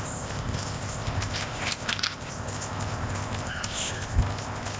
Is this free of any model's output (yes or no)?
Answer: no